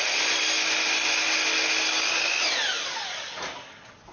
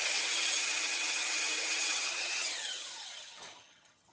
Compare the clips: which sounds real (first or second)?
first